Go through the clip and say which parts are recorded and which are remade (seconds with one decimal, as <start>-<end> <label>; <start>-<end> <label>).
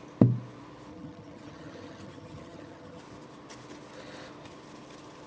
0.0-0.9 recorded; 0.9-3.0 remade; 3.0-5.3 recorded